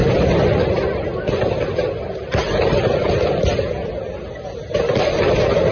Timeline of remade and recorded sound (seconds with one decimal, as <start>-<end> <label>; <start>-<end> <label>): 0.0-3.2 remade; 3.2-5.7 recorded